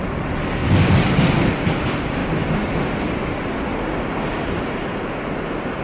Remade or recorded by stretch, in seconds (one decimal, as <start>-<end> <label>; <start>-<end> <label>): 0.0-5.8 recorded